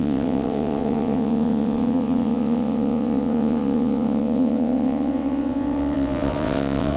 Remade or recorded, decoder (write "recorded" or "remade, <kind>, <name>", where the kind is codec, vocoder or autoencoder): remade, vocoder, WaveNeXt